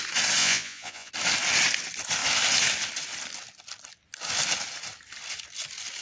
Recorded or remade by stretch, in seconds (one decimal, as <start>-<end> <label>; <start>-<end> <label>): 0.0-0.4 recorded; 0.4-1.1 remade; 1.1-6.0 recorded